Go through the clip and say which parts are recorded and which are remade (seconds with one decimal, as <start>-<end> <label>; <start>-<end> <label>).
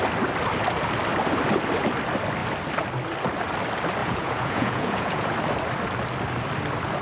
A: 0.0-4.0 recorded; 4.0-5.3 remade; 5.3-7.0 recorded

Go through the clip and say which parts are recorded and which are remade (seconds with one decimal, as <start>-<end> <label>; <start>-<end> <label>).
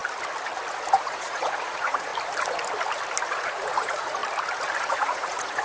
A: 0.0-0.7 recorded; 0.7-2.1 remade; 2.1-3.3 recorded; 3.3-4.2 remade; 4.2-4.8 recorded; 4.8-5.6 remade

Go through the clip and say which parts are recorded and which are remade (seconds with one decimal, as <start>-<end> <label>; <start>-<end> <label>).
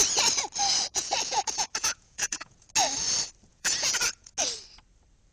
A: 0.0-0.9 recorded; 0.9-2.7 remade; 2.7-3.5 recorded; 3.5-4.3 remade; 4.3-5.3 recorded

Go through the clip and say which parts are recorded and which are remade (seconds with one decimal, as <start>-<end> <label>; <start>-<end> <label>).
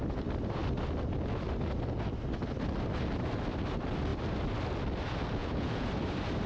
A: 0.0-5.4 recorded; 5.4-5.9 remade; 5.9-6.5 recorded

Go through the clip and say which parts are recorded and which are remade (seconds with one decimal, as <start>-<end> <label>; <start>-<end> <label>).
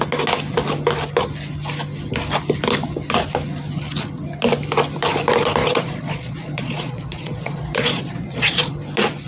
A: 0.0-5.6 recorded; 5.6-8.7 remade; 8.7-9.3 recorded